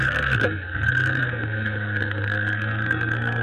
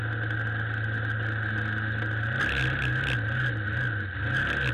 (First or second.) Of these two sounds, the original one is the second